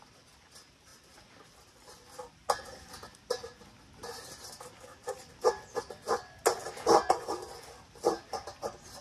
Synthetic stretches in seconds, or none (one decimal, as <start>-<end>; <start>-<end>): none